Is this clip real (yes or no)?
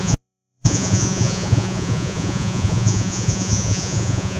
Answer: no